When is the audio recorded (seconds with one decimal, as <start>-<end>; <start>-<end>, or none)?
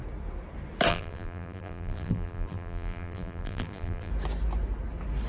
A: 0.0-0.9; 4.1-5.3